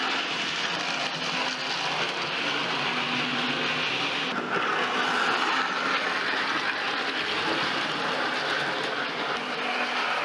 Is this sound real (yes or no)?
yes